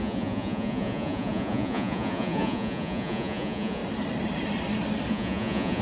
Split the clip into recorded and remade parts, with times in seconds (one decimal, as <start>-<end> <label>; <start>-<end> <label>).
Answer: 0.0-3.8 remade; 3.8-5.1 recorded; 5.1-5.8 remade